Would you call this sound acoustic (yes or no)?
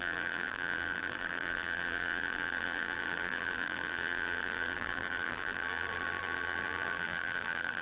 no